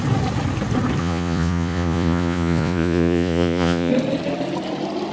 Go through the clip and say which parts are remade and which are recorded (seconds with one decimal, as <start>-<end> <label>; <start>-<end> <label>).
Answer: 0.0-1.0 recorded; 1.0-3.9 remade; 3.9-5.1 recorded